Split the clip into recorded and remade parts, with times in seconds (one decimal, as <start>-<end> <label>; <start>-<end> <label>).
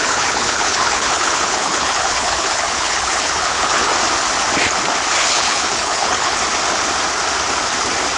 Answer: 0.0-3.9 remade; 3.9-5.2 recorded; 5.2-6.4 remade; 6.4-8.2 recorded